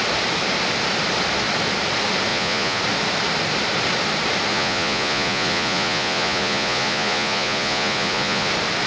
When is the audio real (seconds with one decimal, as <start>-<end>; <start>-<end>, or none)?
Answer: 0.0-2.3; 2.8-4.5; 8.5-8.9